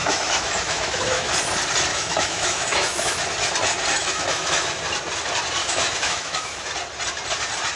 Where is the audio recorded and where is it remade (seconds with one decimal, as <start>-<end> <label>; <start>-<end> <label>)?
0.0-1.3 remade; 1.3-1.9 recorded; 1.9-3.2 remade; 3.2-4.0 recorded; 4.0-4.8 remade; 4.8-5.6 recorded; 5.6-6.6 remade; 6.6-7.8 recorded